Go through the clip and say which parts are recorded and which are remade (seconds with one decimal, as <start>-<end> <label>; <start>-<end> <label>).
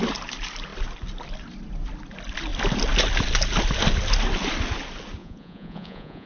0.0-5.2 recorded; 5.2-6.3 remade